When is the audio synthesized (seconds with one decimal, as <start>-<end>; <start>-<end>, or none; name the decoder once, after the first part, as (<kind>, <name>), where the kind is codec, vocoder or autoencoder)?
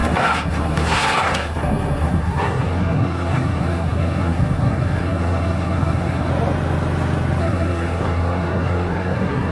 0.0-6.3 (codec, SNAC); 7.4-9.5